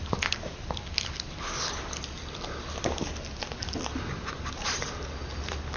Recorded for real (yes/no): yes